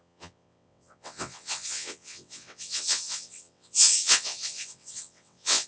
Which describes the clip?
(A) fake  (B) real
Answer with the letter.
A